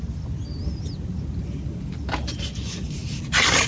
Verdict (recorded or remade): recorded